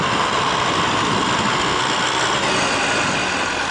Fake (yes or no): no